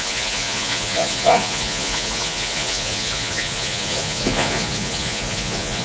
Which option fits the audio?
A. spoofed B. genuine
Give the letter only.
A